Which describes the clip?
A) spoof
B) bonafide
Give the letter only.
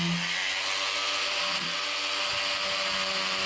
B